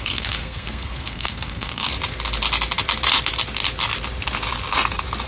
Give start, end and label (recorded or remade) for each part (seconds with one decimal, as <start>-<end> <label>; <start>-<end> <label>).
0.0-1.9 remade; 1.9-5.3 recorded